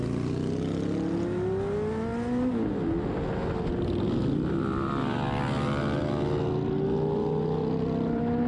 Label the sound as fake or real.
real